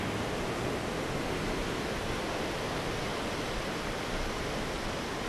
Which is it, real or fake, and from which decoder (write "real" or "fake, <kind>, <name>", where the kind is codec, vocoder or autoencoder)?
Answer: real